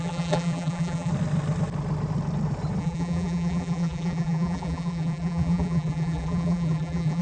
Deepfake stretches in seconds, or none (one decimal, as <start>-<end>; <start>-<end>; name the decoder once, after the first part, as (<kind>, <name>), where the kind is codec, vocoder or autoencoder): 0.0-1.1 (vocoder, BigVGAN v2); 2.8-7.2